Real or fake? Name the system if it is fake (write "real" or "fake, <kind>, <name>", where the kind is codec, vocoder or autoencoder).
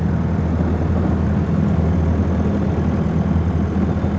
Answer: real